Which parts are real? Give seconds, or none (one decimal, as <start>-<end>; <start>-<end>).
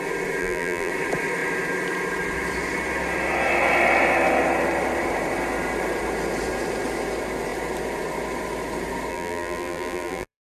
0.0-0.4; 0.9-9.1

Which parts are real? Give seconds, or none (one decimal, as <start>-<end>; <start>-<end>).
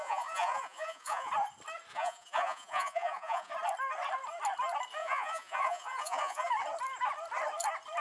1.3-1.9; 3.5-5.0; 6.5-8.0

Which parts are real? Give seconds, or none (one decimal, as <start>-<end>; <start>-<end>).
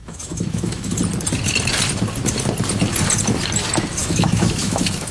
0.9-4.0